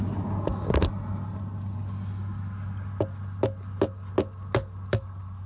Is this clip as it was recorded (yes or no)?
yes